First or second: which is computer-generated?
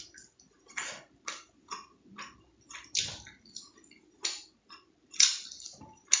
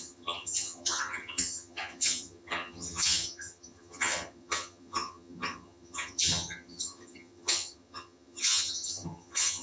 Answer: second